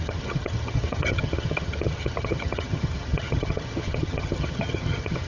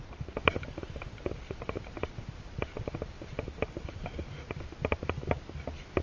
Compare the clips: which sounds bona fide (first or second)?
second